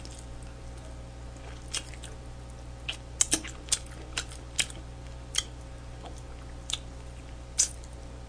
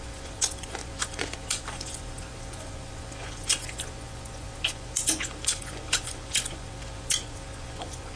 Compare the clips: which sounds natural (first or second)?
first